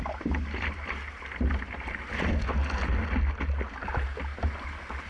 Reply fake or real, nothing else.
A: real